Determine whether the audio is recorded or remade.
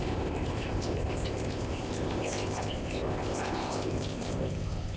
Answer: remade